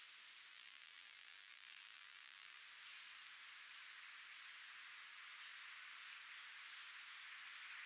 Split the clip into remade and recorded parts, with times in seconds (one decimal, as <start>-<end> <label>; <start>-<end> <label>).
0.0-0.5 recorded; 0.5-2.6 remade; 2.6-7.9 recorded

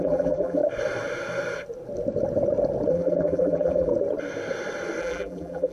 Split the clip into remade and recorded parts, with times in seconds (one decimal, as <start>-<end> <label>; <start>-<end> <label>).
0.0-0.6 remade; 0.6-2.9 recorded; 2.9-3.9 remade; 3.9-5.0 recorded; 5.0-5.7 remade

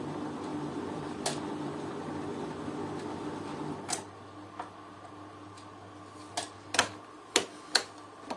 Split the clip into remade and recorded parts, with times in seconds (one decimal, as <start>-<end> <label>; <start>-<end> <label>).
0.0-0.5 recorded; 0.5-1.9 remade; 1.9-8.4 recorded

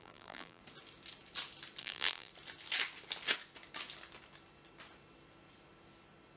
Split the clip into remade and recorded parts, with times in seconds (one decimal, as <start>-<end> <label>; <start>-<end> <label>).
0.0-0.6 remade; 0.6-1.8 recorded; 1.8-2.3 remade; 2.3-6.4 recorded

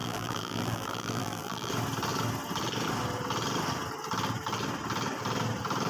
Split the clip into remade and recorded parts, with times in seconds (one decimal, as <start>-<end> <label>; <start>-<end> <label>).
0.0-1.7 remade; 1.7-5.9 recorded

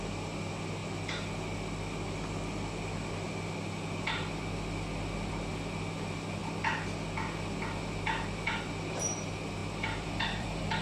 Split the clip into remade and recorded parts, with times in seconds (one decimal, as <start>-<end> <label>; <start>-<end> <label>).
0.0-9.6 recorded; 9.6-10.8 remade